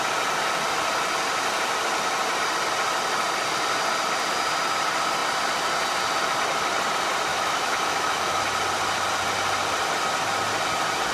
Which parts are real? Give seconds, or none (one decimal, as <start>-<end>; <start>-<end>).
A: 0.0-7.3; 8.4-11.1